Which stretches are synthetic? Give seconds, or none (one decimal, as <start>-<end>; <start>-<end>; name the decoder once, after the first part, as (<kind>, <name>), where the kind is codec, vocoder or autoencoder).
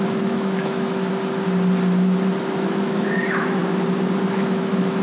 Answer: 0.0-1.1 (autoencoder, DAC-VAE); 2.4-3.6; 4.3-5.0